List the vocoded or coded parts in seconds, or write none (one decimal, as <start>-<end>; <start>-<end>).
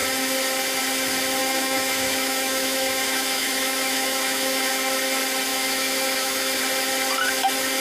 1.4-4.7; 5.5-6.6